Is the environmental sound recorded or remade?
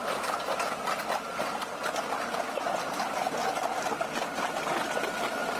recorded